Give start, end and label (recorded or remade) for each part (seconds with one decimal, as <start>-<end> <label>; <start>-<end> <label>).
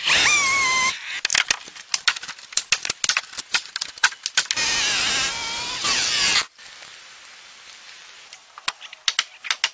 0.0-9.7 recorded